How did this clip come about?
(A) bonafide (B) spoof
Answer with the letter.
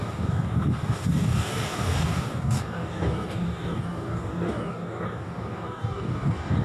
B